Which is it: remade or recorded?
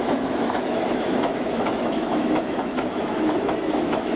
remade